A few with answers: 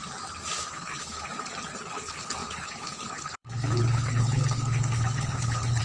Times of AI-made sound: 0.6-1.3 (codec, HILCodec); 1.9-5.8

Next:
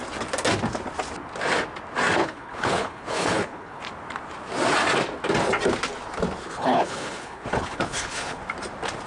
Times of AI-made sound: 2.2-3.8 (codec, HILCodec); 6.4-8.4

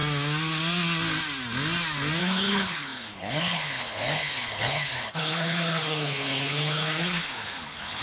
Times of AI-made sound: 2.2-8.0 (codec, HILCodec)